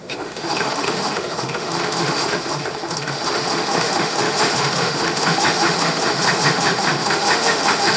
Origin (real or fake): fake